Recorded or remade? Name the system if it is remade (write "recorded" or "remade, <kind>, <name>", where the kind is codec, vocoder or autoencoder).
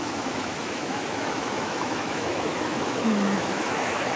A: remade, autoencoder, DAC-VAE